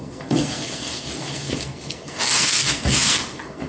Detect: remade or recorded remade